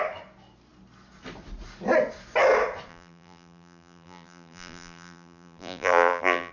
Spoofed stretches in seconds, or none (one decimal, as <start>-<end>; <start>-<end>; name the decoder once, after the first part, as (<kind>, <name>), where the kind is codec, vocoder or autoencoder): 2.9-6.5 (vocoder, BigVGAN v2)

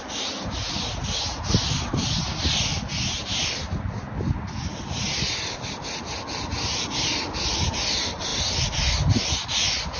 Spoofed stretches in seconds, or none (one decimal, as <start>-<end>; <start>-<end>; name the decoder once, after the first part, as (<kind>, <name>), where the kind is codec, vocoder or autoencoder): none